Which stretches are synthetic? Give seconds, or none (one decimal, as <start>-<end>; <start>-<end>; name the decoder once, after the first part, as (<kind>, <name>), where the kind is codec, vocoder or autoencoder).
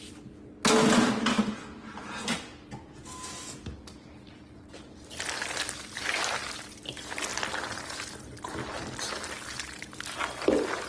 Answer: none